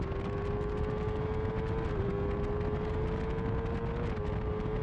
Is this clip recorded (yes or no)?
yes